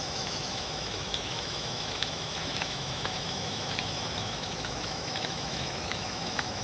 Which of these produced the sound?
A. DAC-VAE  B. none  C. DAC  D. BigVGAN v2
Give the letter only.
A